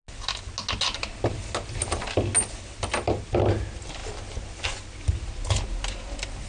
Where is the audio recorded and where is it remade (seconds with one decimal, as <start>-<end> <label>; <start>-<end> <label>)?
0.0-6.5 recorded